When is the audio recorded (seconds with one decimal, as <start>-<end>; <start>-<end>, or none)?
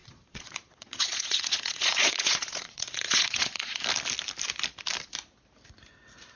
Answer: 3.8-6.4